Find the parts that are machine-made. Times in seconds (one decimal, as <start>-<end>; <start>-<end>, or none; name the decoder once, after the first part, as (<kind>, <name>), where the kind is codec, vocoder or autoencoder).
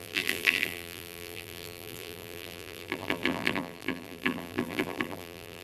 0.0-5.6 (vocoder, BigVGAN v2)